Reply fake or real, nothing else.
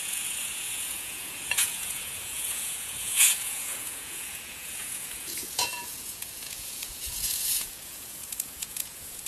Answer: fake